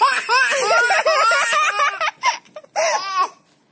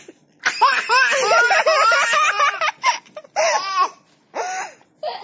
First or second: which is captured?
first